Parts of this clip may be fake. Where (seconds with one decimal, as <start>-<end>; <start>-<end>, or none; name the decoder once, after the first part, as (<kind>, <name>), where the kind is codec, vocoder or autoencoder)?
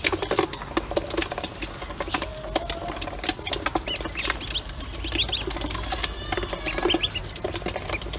none